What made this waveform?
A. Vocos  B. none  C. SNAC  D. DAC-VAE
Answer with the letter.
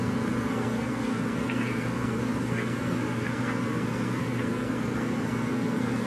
C